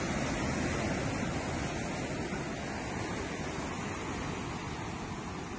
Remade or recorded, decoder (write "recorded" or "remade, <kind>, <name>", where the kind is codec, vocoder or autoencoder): recorded